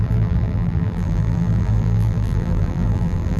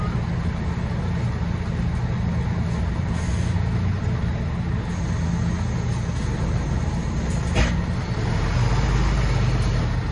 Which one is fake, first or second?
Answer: first